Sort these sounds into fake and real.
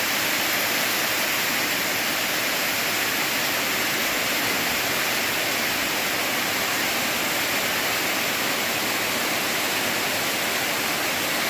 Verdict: real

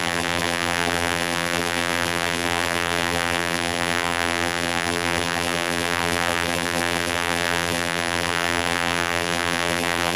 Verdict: fake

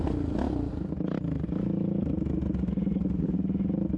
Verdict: real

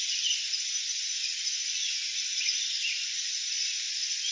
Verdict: fake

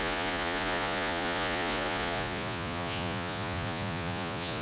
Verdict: fake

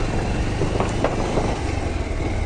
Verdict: real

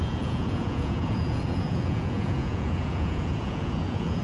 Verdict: fake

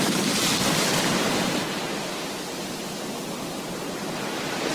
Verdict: real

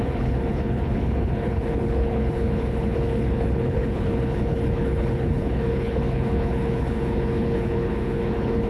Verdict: fake